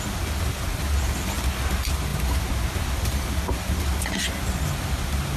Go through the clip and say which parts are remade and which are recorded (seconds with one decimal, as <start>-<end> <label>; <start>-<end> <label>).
0.0-5.4 recorded